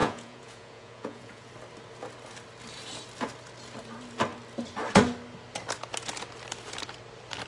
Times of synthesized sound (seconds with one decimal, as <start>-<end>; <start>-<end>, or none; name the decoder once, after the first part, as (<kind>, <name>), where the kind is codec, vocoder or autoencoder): 0.0-1.5 (vocoder, Vocos)

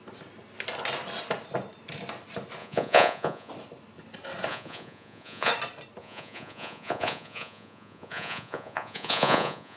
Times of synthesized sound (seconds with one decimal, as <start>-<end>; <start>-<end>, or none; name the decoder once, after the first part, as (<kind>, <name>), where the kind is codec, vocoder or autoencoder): 2.6-3.5 (vocoder, Vocos); 4.5-5.5; 6.0-9.8

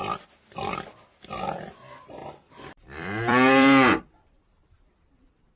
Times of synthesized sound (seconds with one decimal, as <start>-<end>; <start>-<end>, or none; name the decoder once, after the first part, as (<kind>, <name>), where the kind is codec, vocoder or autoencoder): 0.0-1.2 (vocoder, BigVGAN v2); 2.2-5.6

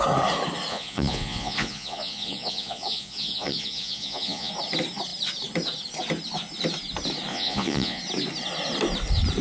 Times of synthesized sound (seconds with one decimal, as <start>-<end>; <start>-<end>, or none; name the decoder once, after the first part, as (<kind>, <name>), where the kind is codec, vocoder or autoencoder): 0.7-4.5 (vocoder, Vocos); 7.3-8.0